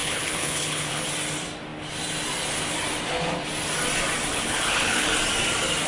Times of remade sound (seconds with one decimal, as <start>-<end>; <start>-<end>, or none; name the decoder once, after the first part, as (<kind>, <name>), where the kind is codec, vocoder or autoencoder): 0.0-1.0 (codec, HILCodec); 4.3-5.1